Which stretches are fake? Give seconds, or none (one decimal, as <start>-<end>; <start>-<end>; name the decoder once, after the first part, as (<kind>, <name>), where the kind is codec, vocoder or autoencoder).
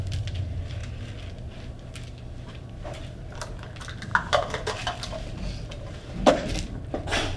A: 0.0-0.8 (vocoder, BigVGAN v2); 2.5-7.4